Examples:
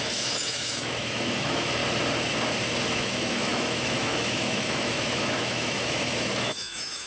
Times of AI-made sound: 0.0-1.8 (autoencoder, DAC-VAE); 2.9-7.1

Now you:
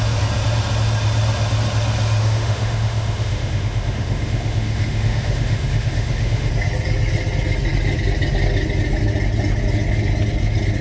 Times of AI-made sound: 2.2-6.5 (autoencoder, DAC-VAE)

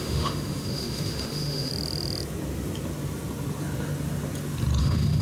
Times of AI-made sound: 0.0-1.7 (autoencoder, DAC-VAE); 4.8-5.2

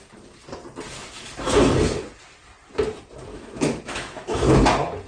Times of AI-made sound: 3.3-4.6 (autoencoder, DAC-VAE)

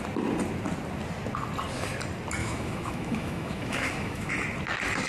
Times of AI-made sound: 2.4-4.3 (autoencoder, DAC-VAE)